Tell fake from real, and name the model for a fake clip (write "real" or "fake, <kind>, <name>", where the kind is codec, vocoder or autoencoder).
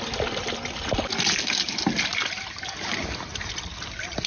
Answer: real